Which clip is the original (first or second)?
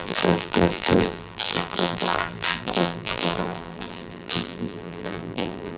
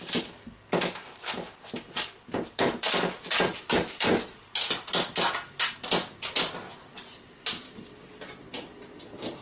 second